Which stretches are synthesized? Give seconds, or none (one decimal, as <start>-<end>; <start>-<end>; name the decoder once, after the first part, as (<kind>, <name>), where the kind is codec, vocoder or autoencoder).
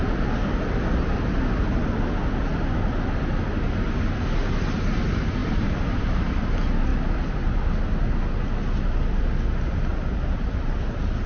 5.4-6.3 (vocoder, BigVGAN v2)